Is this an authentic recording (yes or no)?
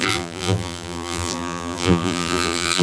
no